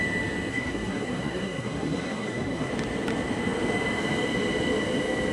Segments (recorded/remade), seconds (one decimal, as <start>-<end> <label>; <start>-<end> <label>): 0.0-0.5 recorded; 0.5-2.7 remade; 2.7-5.3 recorded